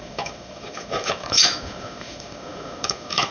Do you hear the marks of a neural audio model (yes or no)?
yes